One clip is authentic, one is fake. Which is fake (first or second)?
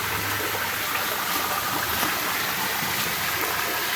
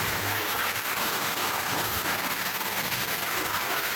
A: second